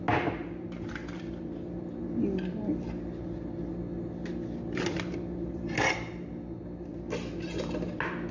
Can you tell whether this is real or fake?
real